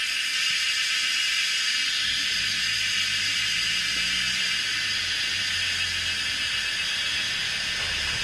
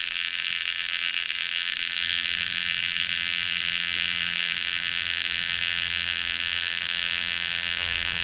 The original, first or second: first